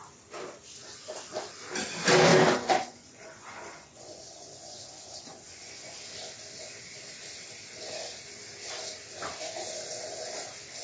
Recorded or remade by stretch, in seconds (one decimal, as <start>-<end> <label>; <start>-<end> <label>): 0.0-2.3 recorded; 2.3-6.0 remade; 6.0-10.8 recorded